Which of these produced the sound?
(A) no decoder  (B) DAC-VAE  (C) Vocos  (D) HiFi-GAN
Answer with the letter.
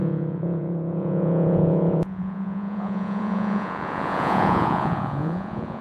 C